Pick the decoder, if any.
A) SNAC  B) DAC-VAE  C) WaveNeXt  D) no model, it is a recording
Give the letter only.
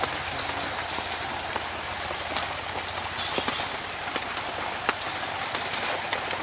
D